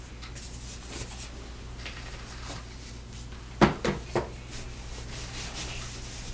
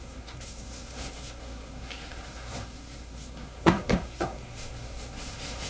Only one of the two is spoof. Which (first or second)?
second